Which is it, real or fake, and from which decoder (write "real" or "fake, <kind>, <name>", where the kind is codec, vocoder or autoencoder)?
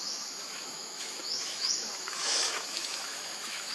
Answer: fake, autoencoder, DAC-VAE